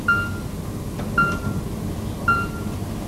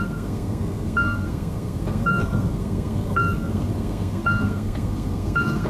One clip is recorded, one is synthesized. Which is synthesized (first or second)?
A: second